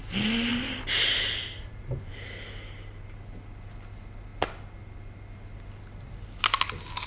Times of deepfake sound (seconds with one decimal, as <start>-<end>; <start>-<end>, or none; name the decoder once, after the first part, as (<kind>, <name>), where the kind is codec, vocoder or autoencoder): 0.5-2.1 (vocoder, BigVGAN v2)